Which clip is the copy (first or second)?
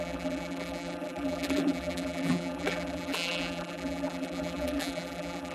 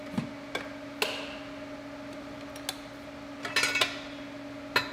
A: first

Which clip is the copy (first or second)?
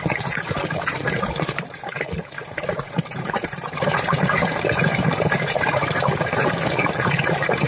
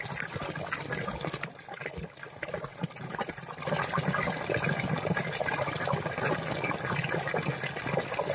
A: first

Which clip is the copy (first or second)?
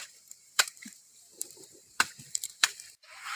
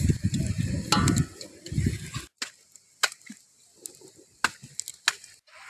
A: first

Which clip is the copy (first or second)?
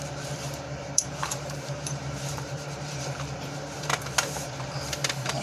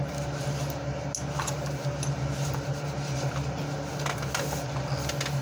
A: first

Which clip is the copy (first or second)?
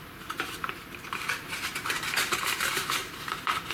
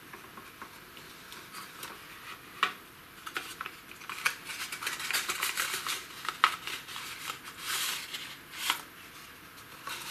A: first